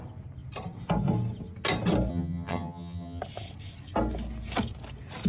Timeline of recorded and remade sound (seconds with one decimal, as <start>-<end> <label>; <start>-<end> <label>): 0.0-2.1 recorded; 2.1-3.2 remade; 3.2-5.3 recorded